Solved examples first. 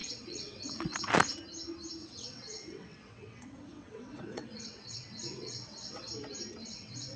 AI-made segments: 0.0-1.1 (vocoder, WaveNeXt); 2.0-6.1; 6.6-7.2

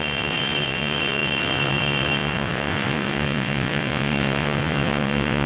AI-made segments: 0.0-5.5 (vocoder, WaveNeXt)

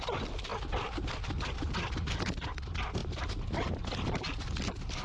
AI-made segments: none